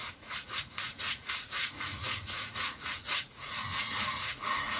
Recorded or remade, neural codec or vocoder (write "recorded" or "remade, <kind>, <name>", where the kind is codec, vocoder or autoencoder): remade, vocoder, Vocos